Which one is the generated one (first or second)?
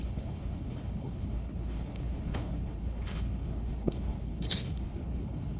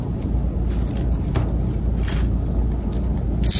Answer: first